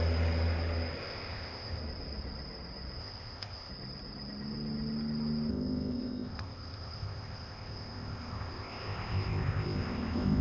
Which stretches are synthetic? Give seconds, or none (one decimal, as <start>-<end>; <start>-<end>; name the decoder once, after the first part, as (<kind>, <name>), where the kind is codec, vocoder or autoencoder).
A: 1.0-1.8 (codec, ZipCodec); 3.0-3.7; 5.5-10.4